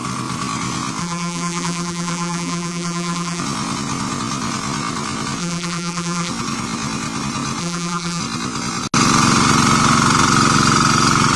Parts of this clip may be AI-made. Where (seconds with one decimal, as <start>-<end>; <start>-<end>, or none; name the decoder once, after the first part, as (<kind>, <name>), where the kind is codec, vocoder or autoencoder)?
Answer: 1.0-3.4 (vocoder, BigVGAN v2); 5.4-6.3; 7.6-8.2